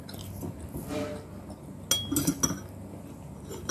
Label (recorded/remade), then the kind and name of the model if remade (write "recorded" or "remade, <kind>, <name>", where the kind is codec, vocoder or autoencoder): recorded